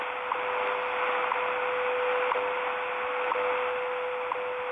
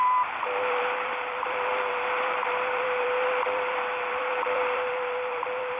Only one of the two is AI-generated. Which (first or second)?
second